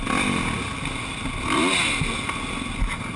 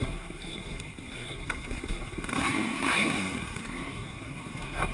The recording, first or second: first